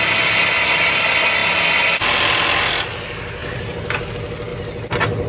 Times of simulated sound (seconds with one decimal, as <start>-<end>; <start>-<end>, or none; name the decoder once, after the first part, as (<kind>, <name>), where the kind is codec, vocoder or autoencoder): 3.4-4.1 (vocoder, BigVGAN v2)